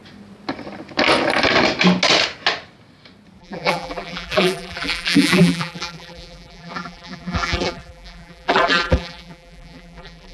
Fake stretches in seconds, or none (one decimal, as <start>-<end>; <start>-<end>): 3.4-10.3